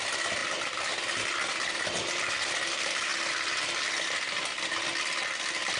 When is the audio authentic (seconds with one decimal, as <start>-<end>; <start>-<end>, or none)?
0.0-5.8